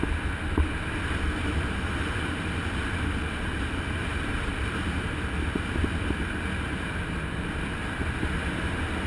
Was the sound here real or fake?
real